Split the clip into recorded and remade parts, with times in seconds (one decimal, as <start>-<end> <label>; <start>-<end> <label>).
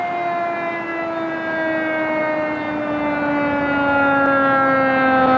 0.0-5.4 recorded